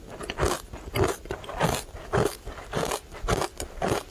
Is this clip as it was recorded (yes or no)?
yes